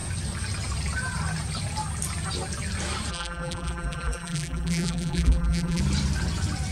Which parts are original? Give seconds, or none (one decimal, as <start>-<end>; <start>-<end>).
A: 0.0-3.1; 5.8-6.7